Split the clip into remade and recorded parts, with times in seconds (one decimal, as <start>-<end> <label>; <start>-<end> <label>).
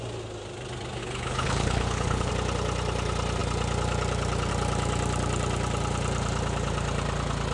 0.0-1.0 recorded; 1.0-2.3 remade; 2.3-7.5 recorded